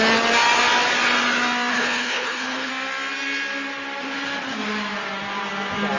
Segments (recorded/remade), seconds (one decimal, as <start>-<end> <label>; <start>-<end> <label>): 0.0-1.7 recorded; 1.7-2.7 remade; 2.7-6.0 recorded